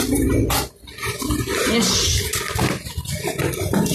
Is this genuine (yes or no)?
yes